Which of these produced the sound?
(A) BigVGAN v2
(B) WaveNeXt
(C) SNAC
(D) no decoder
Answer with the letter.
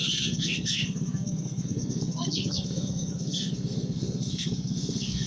C